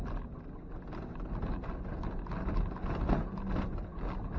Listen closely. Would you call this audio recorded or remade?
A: recorded